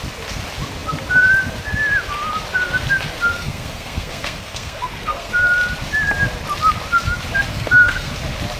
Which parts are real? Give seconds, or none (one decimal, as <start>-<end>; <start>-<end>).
0.0-3.3; 5.3-7.5; 8.1-8.6